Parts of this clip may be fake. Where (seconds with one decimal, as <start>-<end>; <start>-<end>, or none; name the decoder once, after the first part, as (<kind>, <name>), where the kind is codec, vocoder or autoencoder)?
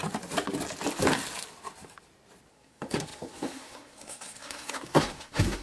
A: 2.5-5.6 (codec, SNAC)